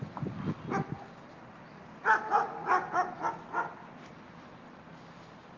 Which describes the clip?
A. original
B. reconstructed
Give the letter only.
A